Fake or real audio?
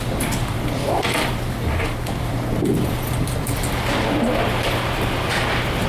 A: fake